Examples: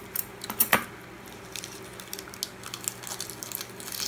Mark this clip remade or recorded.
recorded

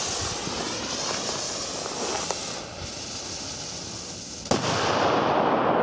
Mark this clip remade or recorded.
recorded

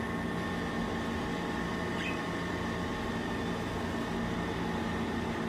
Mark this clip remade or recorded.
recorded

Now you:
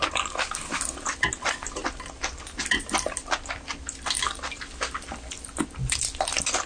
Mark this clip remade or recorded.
remade